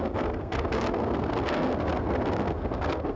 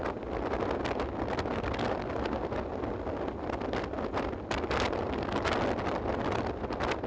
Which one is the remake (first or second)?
first